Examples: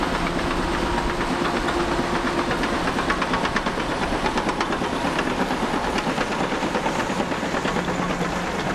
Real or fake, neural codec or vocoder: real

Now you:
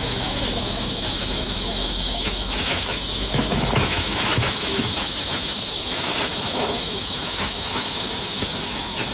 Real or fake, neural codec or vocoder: fake, autoencoder, DAC-VAE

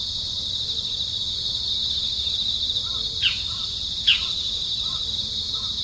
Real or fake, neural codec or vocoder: real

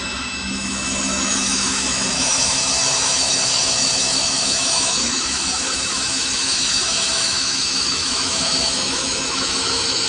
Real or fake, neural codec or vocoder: fake, autoencoder, DAC-VAE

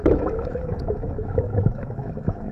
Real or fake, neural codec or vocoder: fake, autoencoder, DAC-VAE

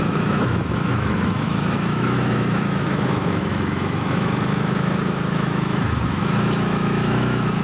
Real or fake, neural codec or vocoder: fake, autoencoder, DAC-VAE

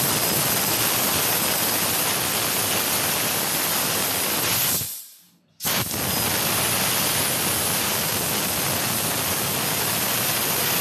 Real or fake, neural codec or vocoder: real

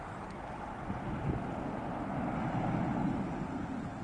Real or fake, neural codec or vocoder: real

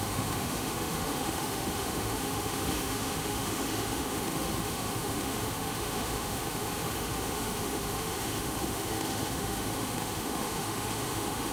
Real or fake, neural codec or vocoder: fake, autoencoder, DAC-VAE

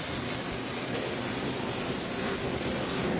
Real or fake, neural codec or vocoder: real